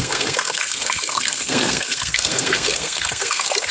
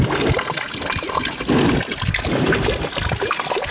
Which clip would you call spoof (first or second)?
first